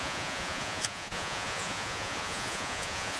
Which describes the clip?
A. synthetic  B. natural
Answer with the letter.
A